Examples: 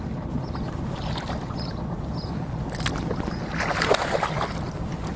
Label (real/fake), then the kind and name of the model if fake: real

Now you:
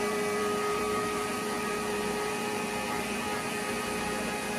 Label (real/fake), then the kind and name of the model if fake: fake, vocoder, BigVGAN v2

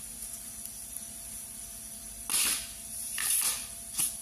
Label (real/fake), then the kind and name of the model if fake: real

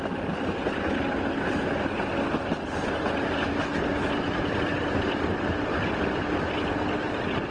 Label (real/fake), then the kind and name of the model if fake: real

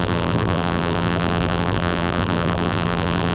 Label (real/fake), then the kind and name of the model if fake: fake, vocoder, BigVGAN v2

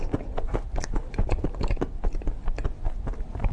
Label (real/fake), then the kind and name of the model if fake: fake, vocoder, BigVGAN v2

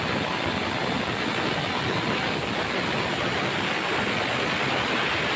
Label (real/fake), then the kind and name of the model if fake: real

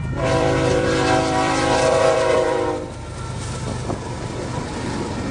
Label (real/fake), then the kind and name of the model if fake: fake, vocoder, BigVGAN v2